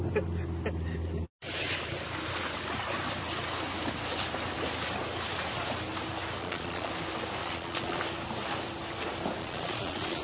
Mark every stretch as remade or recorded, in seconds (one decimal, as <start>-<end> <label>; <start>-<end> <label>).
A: 0.0-6.4 recorded; 6.4-6.9 remade; 6.9-7.4 recorded; 7.4-8.0 remade; 8.0-9.4 recorded; 9.4-10.2 remade